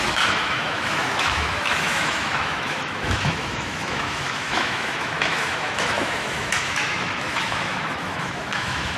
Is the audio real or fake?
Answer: fake